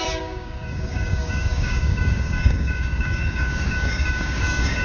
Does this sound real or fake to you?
fake